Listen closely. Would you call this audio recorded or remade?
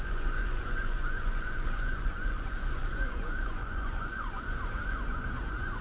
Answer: remade